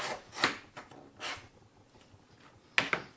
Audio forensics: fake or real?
real